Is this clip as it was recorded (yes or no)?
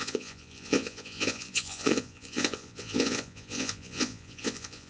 no